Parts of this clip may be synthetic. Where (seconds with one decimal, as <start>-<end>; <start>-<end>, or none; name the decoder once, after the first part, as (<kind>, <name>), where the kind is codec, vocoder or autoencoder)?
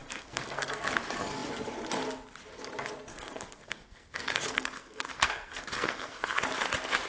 0.0-0.8 (codec, SNAC); 3.1-6.4